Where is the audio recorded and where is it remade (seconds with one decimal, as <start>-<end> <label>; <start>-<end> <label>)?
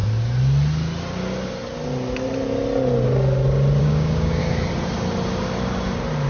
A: 0.0-3.8 recorded; 3.8-4.4 remade; 4.4-6.3 recorded